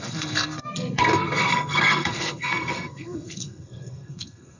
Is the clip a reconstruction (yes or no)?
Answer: yes